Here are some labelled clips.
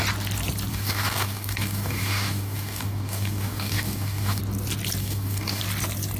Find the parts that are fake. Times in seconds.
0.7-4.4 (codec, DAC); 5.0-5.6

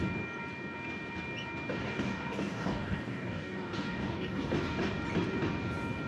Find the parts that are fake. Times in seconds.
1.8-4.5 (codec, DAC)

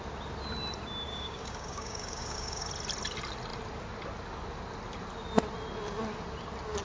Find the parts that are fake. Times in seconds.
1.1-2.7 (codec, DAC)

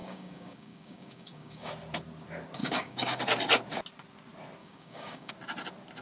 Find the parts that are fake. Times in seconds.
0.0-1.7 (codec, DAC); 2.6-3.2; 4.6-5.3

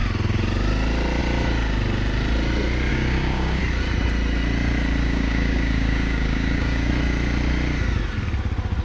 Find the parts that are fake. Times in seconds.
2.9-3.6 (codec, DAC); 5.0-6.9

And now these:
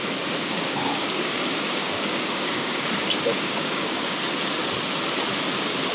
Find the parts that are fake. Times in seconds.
0.4-2.9 (codec, DAC); 3.3-4.2